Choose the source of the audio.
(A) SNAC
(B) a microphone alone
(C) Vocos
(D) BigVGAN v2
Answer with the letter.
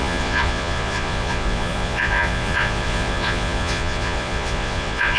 C